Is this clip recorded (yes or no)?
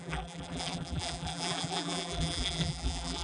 no